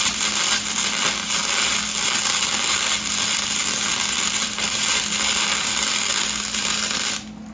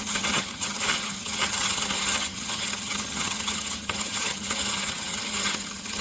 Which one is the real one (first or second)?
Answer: first